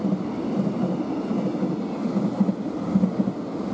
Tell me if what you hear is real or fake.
real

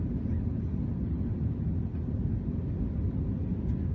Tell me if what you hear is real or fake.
real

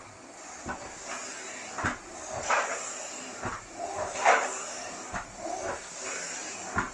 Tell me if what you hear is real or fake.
real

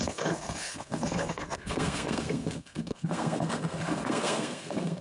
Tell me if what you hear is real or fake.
fake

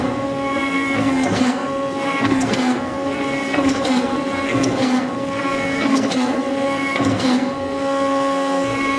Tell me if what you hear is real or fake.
fake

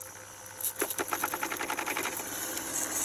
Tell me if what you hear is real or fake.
real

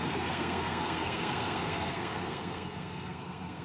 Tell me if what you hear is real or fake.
fake